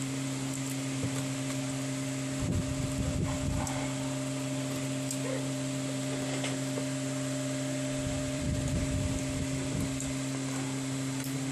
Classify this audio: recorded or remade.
remade